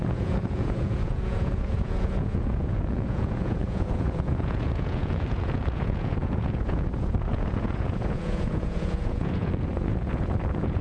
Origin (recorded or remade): remade